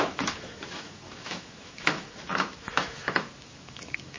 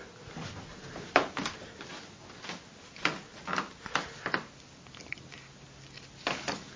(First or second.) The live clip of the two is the second